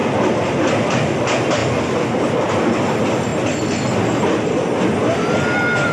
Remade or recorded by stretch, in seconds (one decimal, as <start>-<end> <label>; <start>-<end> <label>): 0.0-5.9 recorded